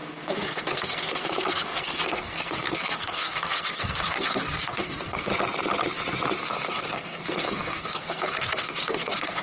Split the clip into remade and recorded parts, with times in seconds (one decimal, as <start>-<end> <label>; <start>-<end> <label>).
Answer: 0.0-5.3 remade; 5.3-6.4 recorded; 6.4-9.4 remade